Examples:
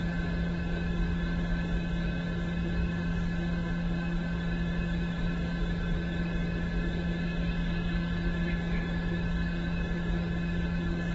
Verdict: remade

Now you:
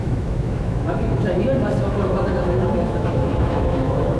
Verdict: remade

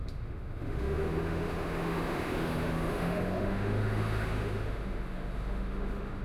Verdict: remade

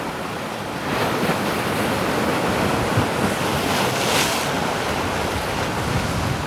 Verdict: recorded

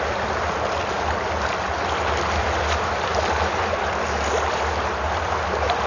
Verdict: recorded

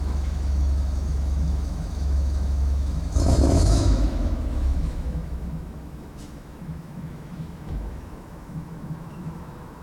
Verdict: remade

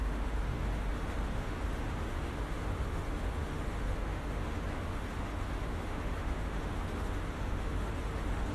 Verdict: remade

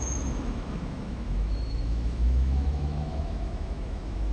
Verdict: remade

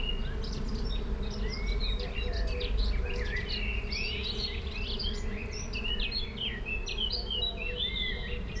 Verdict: recorded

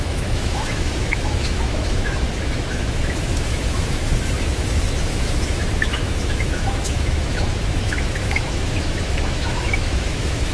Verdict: remade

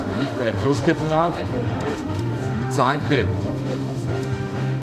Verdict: remade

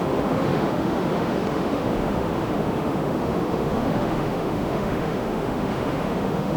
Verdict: remade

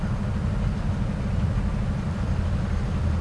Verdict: recorded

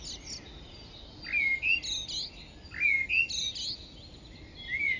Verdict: recorded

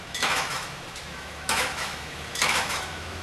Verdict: remade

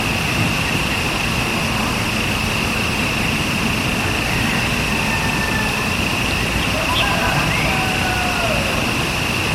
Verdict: recorded